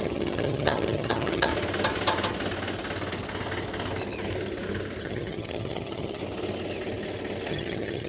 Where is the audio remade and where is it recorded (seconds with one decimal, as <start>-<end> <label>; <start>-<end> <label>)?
0.0-1.5 remade; 1.5-5.0 recorded; 5.0-6.2 remade; 6.2-7.5 recorded; 7.5-8.1 remade